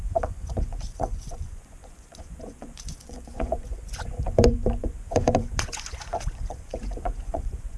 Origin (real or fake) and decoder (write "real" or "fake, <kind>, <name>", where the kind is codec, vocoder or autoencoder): fake, vocoder, Vocos